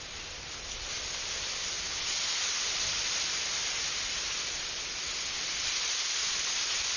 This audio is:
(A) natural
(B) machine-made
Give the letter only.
A